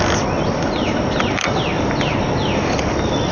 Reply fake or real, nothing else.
real